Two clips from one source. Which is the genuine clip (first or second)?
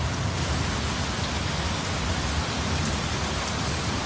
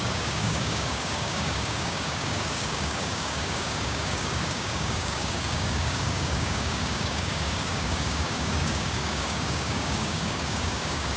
first